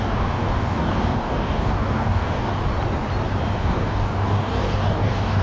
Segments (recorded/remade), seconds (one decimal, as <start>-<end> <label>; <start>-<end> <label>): 0.0-2.5 remade; 2.5-3.6 recorded; 3.6-5.4 remade